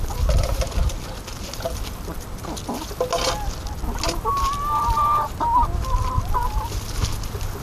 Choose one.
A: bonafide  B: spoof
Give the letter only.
A